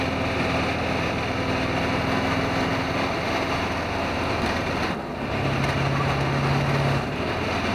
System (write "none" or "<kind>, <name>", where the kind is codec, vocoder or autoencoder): none